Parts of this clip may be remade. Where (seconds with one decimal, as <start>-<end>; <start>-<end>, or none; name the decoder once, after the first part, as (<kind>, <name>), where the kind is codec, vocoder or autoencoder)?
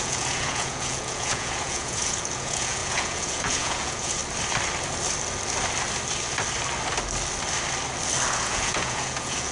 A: 0.0-4.2 (vocoder, Vocos); 8.3-9.5